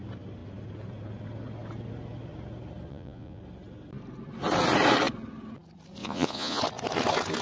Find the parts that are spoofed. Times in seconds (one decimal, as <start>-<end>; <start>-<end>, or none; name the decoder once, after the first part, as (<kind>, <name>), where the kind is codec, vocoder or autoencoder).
2.9-3.4 (vocoder, Vocos); 6.0-6.6